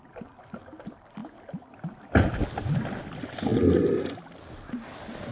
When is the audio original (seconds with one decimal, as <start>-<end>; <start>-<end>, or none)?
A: 0.0-5.3